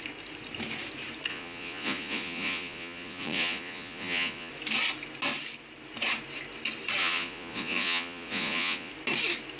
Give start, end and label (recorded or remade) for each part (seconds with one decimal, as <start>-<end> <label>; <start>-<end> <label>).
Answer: 0.0-1.3 recorded; 1.3-4.5 remade; 4.5-7.0 recorded; 7.0-8.9 remade; 8.9-9.6 recorded